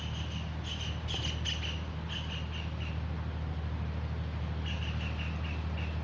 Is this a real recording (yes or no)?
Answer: yes